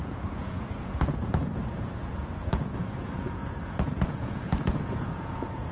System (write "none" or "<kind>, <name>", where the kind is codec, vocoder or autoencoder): vocoder, Vocos